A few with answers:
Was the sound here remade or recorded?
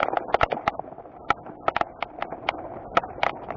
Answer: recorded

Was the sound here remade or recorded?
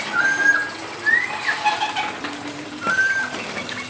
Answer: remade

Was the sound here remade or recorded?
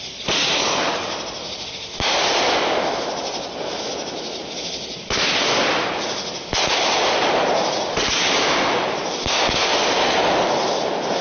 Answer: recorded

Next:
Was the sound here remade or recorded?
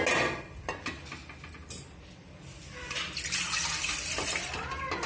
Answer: recorded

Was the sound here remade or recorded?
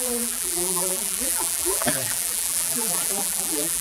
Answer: remade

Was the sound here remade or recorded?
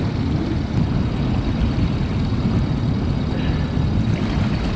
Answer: recorded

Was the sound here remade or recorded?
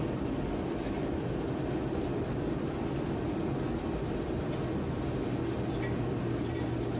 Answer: recorded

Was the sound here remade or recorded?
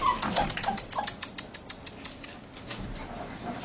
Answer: recorded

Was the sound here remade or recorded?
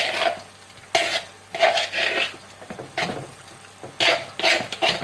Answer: recorded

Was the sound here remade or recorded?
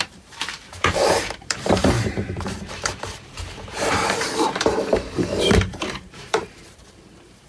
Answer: remade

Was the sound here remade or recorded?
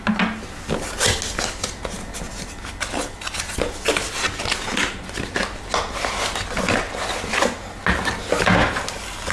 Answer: recorded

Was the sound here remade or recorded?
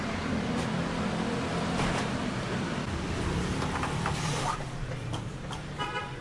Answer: remade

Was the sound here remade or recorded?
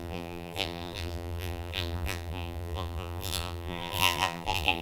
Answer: remade